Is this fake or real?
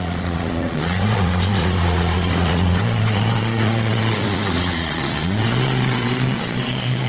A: fake